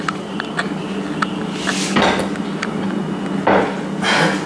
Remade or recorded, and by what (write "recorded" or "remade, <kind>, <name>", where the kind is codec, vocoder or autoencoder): recorded